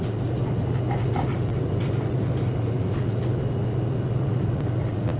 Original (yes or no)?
yes